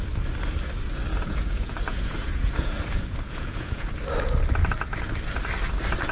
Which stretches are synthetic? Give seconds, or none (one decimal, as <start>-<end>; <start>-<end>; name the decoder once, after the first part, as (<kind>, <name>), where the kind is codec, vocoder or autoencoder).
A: 1.1-4.0 (vocoder, Vocos)

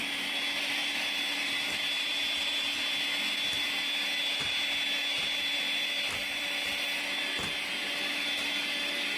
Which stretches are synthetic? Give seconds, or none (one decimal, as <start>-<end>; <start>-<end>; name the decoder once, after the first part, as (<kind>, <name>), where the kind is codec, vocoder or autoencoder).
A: none

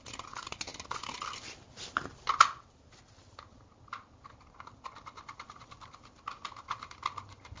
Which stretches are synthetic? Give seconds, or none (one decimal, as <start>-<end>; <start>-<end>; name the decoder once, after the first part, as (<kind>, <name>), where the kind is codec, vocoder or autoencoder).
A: none

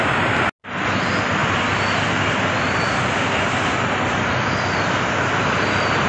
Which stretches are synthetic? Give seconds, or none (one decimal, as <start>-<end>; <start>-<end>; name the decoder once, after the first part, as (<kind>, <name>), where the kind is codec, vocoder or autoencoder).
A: none

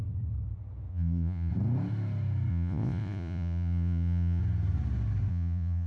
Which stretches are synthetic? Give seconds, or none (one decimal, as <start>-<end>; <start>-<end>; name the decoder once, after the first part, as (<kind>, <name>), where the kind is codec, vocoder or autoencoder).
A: 0.9-1.5 (vocoder, Vocos); 2.5-4.4; 5.3-5.9